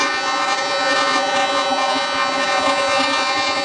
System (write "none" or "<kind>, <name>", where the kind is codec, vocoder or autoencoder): vocoder, Vocos